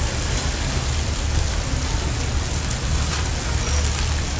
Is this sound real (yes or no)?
yes